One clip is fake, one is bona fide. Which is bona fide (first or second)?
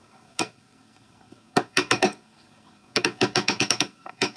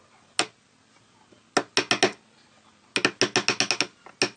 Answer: second